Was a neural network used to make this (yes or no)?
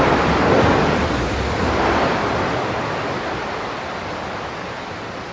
no